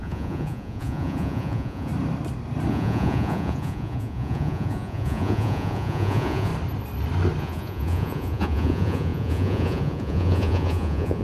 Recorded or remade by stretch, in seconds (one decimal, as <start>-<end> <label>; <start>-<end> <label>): 0.0-1.9 remade; 1.9-2.7 recorded; 2.7-6.5 remade; 6.5-7.4 recorded; 7.4-11.2 remade